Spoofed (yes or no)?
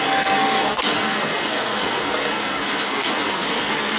yes